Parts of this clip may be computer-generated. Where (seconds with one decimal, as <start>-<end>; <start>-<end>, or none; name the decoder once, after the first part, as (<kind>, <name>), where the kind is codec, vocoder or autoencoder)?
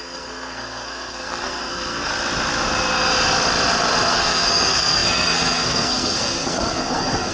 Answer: 0.0-2.1 (codec, SNAC); 4.1-7.3